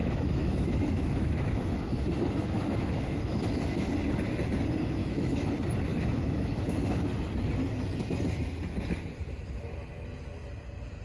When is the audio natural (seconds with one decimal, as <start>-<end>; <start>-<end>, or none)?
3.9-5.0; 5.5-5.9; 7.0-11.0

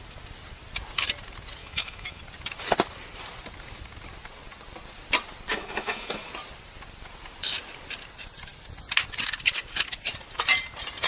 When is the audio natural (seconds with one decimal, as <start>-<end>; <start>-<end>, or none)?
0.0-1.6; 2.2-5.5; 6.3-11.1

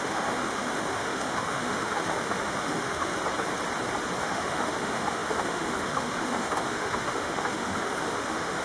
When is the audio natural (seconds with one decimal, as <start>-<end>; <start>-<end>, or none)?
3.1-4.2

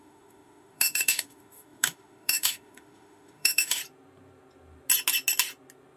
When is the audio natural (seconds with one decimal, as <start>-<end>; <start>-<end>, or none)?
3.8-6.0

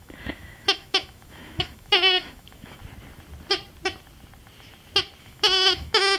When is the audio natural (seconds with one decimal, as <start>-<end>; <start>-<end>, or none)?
2.8-5.2

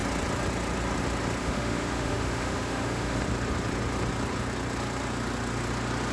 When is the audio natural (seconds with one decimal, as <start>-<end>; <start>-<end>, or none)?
0.0-1.4; 3.2-6.1